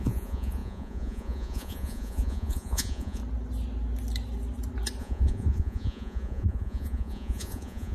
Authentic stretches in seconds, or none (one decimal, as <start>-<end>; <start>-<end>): 3.2-5.0